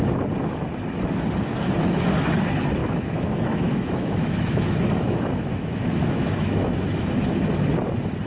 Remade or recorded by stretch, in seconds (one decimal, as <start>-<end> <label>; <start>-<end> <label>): 0.0-2.8 recorded; 2.8-7.1 remade; 7.1-8.3 recorded